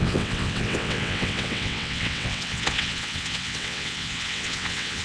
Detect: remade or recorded remade